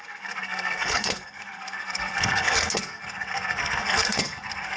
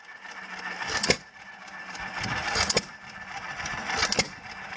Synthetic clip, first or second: first